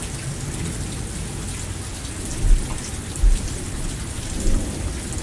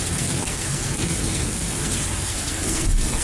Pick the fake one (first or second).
second